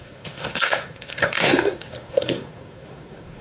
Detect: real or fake fake